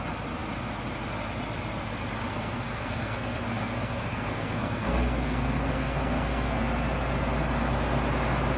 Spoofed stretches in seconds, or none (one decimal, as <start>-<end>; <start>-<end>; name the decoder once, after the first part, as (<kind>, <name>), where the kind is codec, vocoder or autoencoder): 2.3-6.6 (codec, SNAC)